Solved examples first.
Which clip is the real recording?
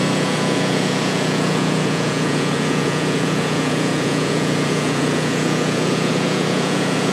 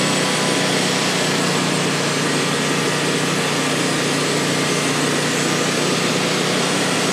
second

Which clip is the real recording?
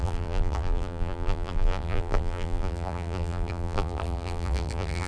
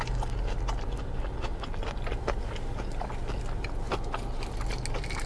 second